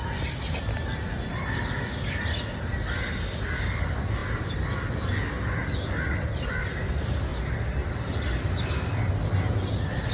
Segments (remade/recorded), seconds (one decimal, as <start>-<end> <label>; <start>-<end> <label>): 0.0-7.3 recorded; 7.3-8.7 remade; 8.7-10.1 recorded